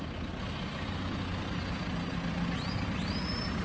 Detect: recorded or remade recorded